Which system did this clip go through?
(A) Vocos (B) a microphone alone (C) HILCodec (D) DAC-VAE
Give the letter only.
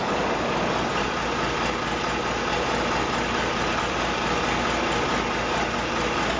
B